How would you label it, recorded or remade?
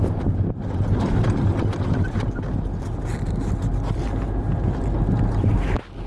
recorded